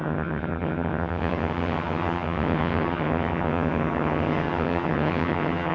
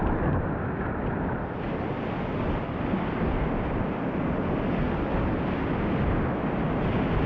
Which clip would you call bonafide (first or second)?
second